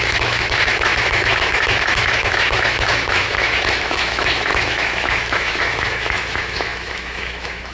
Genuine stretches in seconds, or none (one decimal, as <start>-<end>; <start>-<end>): none